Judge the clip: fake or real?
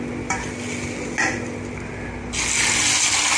real